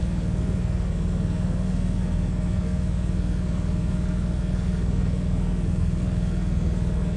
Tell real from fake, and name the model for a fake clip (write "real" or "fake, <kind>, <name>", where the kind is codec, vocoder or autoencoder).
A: fake, codec, SNAC